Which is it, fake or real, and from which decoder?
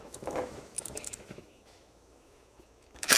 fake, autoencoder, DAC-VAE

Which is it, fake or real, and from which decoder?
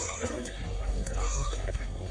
fake, codec, SNAC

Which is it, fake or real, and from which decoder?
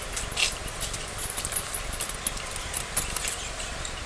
real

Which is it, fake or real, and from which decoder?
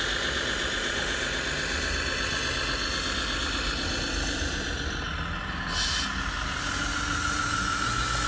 real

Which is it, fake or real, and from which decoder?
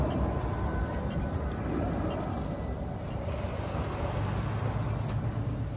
real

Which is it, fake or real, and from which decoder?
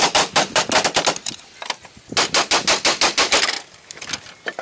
real